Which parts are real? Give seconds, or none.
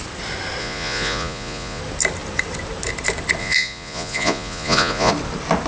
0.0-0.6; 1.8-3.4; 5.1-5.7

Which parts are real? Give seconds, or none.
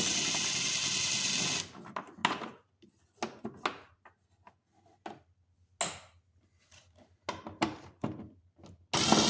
0.0-9.3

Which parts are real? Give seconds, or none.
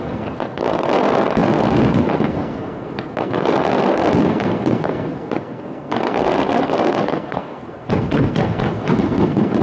none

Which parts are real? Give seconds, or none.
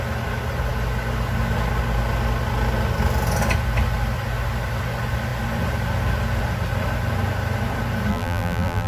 0.0-8.1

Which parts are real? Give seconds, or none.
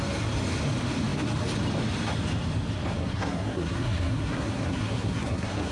0.0-3.0